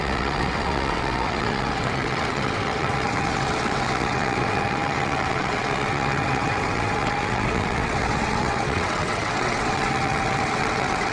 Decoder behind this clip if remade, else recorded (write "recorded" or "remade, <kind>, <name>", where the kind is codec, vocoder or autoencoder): remade, vocoder, WaveNeXt